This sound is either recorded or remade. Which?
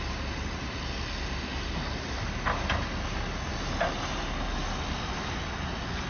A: recorded